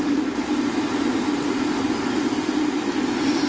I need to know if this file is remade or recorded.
recorded